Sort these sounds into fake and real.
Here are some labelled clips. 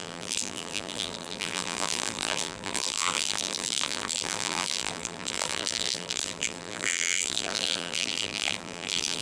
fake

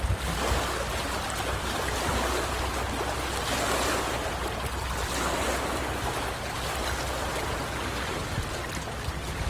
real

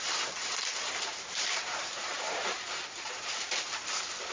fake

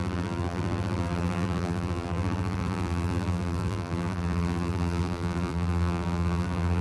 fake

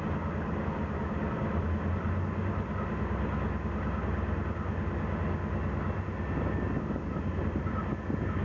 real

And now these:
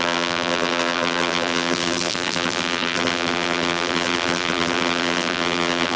fake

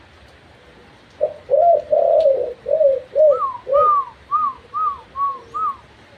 real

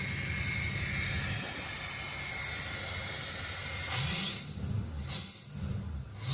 real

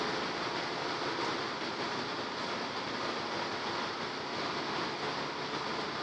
real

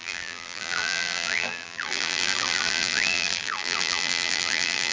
fake